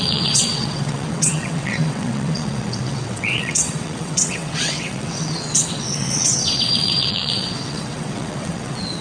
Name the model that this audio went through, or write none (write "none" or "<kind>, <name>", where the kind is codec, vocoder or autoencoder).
vocoder, WaveNeXt